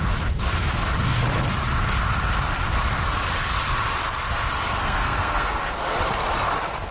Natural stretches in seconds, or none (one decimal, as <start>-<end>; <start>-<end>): 0.0-4.8; 5.6-6.9